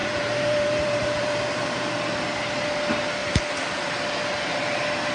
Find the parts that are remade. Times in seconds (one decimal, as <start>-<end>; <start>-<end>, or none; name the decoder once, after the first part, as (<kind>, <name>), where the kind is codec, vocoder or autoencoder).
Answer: 0.0-1.8 (vocoder, BigVGAN v2); 3.2-4.0